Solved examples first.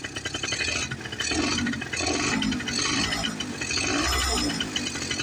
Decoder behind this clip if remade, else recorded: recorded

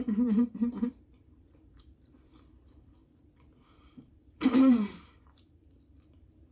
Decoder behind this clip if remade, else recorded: remade, vocoder, BigVGAN v2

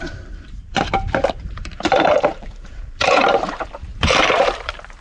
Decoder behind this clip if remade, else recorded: remade, vocoder, BigVGAN v2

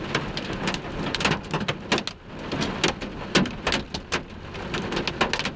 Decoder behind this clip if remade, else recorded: recorded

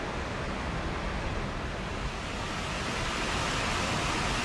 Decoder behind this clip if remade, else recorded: recorded